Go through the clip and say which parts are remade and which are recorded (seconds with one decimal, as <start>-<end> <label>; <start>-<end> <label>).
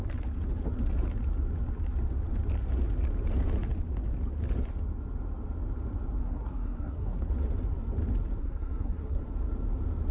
0.0-6.2 recorded; 6.2-7.3 remade; 7.3-8.4 recorded; 8.4-9.2 remade; 9.2-10.1 recorded